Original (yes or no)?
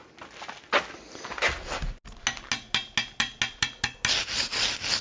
yes